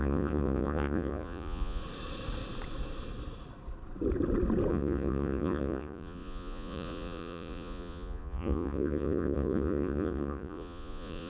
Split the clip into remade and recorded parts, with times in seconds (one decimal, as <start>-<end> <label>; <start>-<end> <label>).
0.0-1.8 remade; 1.8-4.7 recorded; 4.7-11.3 remade

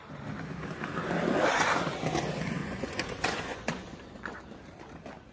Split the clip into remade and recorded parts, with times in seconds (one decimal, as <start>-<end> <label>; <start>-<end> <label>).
0.0-2.6 recorded; 2.6-4.4 remade; 4.4-5.3 recorded

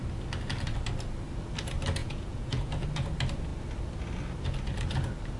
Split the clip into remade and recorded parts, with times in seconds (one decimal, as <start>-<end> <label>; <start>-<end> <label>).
0.0-2.0 recorded; 2.0-2.7 remade; 2.7-5.4 recorded

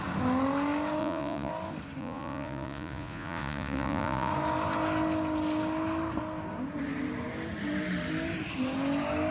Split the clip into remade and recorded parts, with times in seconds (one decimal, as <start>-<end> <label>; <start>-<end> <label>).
0.0-1.0 recorded; 1.0-1.5 remade; 1.5-2.0 recorded; 2.0-4.3 remade; 4.3-9.3 recorded

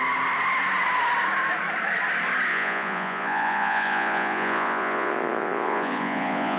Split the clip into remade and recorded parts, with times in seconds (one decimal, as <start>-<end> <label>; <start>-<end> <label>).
0.0-2.5 recorded; 2.5-6.6 remade

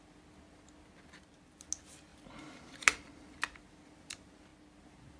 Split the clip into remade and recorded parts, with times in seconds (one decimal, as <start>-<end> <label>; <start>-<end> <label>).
0.0-5.2 recorded

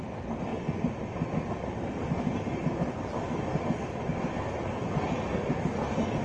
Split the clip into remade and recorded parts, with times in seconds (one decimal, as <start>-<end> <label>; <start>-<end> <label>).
0.0-6.2 recorded